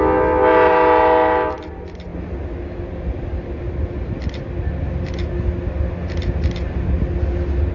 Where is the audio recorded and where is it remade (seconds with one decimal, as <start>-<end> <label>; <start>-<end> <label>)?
0.0-7.7 recorded